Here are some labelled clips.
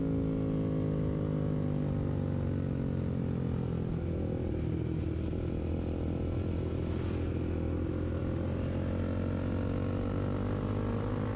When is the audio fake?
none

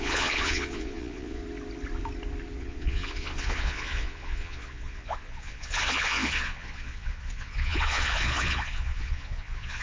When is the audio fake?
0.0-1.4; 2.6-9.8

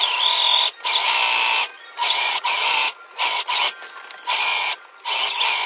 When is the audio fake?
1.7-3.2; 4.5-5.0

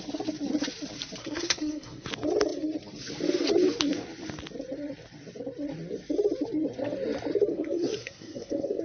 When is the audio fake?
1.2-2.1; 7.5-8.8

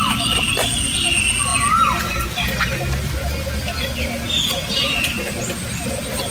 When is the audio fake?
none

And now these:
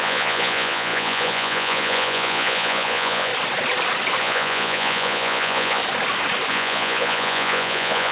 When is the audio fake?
0.0-3.3; 4.2-5.8; 6.5-8.1

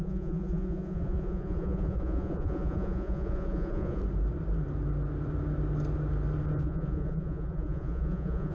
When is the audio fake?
0.0-4.0; 6.6-8.5

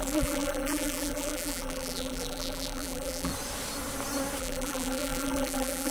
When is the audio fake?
0.0-3.3; 4.4-5.9